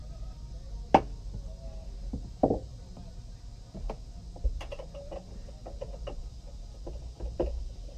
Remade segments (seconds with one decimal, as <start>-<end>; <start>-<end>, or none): none